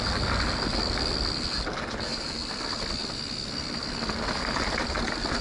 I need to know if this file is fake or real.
real